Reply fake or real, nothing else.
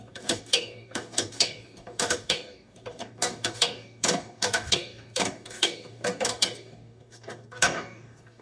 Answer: fake